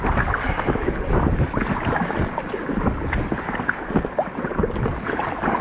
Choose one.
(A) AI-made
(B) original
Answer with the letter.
B